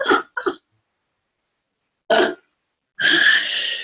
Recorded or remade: recorded